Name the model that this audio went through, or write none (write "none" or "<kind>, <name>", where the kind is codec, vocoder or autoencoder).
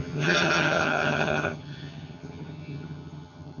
vocoder, HiFi-GAN